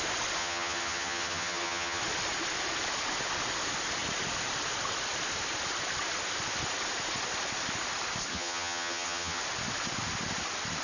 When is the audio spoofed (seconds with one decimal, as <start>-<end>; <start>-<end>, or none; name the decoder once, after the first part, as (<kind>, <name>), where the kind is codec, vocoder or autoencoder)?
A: 0.4-2.0 (vocoder, HiFi-GAN); 8.3-9.4